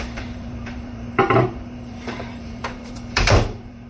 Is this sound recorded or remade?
remade